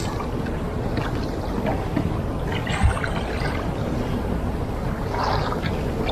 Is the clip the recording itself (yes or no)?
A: yes